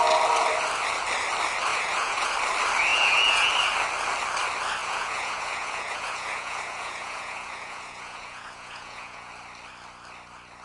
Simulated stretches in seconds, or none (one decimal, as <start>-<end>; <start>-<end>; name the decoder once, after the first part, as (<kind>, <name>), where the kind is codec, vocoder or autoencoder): 1.7-2.3 (vocoder, Vocos); 2.9-3.5; 4.8-9.3